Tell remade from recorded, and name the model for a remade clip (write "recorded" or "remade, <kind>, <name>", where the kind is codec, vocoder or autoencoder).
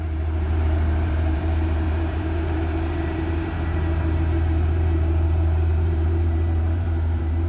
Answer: remade, vocoder, BigVGAN v2